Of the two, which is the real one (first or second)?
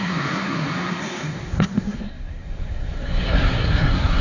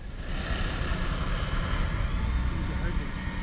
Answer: second